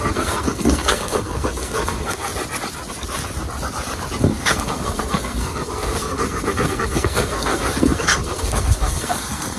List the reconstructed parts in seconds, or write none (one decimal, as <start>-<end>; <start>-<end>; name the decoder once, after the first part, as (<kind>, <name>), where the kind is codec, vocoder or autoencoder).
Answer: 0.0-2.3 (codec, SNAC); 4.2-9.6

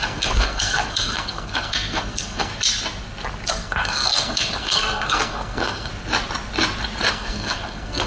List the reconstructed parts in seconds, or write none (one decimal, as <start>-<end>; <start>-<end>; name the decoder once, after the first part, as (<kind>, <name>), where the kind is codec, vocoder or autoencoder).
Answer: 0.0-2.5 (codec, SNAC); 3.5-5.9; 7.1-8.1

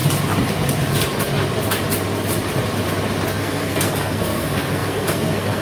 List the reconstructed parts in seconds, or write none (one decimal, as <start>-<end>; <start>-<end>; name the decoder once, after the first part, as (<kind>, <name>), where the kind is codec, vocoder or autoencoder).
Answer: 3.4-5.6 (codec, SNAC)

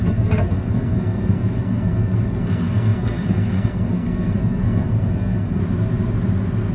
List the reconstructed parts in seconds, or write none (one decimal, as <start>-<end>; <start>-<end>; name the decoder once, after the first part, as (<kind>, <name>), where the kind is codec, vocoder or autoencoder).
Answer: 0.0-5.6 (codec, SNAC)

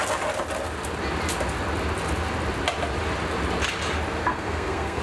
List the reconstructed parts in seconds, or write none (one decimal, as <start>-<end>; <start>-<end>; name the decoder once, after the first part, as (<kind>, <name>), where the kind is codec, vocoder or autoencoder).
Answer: 4.2-5.0 (codec, SNAC)

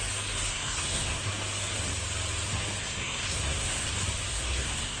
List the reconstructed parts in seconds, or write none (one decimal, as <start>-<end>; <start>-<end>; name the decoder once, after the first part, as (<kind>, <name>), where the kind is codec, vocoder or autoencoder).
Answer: 0.5-1.3 (codec, SNAC); 2.8-3.9; 4.3-5.0